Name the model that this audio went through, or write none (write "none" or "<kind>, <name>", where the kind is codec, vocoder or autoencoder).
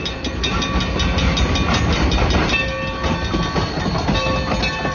none